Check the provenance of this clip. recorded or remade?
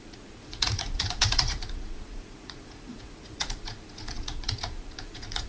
remade